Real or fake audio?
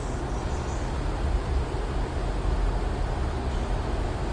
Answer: real